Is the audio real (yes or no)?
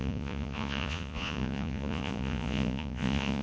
no